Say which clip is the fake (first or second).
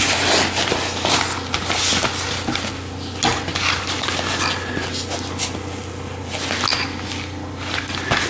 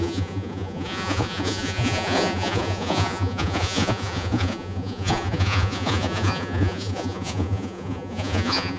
second